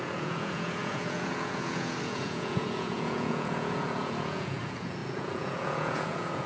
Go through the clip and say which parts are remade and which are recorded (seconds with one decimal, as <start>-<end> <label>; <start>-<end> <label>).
0.0-6.5 remade

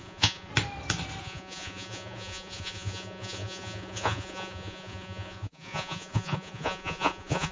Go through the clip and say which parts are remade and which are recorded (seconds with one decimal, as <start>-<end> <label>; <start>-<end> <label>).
0.0-0.5 remade; 0.5-1.2 recorded; 1.2-7.5 remade

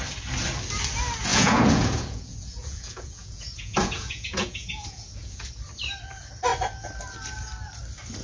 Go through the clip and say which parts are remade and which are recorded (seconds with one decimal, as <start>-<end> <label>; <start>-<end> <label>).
0.0-1.3 recorded; 1.3-5.5 remade; 5.5-8.2 recorded

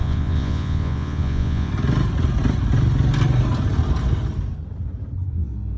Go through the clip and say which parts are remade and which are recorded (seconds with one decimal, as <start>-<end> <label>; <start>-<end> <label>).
0.0-1.7 remade; 1.7-5.8 recorded